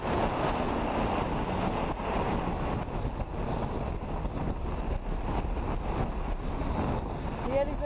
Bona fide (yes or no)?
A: yes